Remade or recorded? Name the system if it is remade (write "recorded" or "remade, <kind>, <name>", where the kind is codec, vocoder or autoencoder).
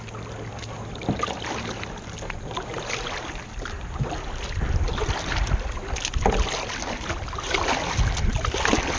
recorded